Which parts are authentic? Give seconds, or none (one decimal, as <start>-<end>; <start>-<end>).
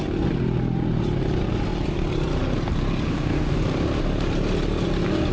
0.0-3.1; 3.6-5.3